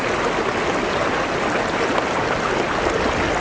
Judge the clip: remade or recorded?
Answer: recorded